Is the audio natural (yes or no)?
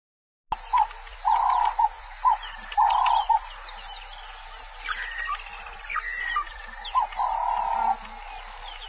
yes